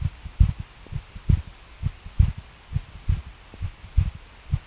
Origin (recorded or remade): recorded